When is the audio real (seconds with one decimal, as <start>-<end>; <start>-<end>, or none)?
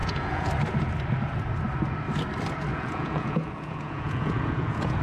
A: 0.5-2.7